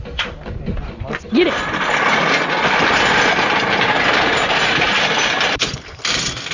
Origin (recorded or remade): recorded